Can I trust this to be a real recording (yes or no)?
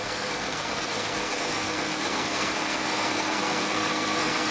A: no